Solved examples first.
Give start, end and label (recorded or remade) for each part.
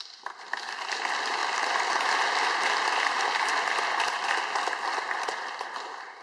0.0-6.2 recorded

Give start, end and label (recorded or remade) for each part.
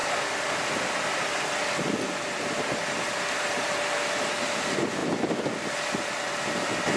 0.0-7.0 recorded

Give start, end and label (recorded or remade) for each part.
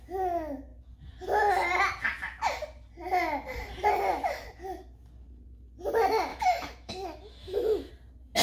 0.0-6.3 recorded; 6.3-7.9 remade; 7.9-8.4 recorded